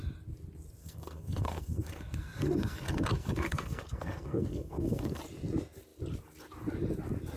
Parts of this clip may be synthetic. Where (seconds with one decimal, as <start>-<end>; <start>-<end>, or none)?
0.8-5.2